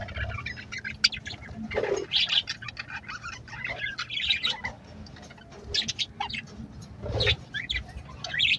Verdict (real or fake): real